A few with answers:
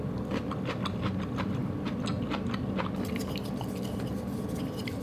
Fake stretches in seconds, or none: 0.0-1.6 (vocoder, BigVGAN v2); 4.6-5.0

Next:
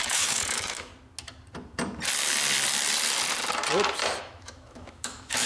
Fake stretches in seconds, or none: 0.0-0.9 (autoencoder, DAC-VAE); 4.2-5.5